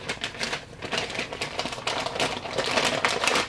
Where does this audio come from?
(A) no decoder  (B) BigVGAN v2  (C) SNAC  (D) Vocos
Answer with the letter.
B